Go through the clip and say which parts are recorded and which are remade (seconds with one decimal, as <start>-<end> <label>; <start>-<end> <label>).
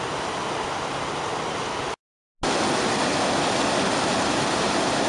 0.0-5.1 recorded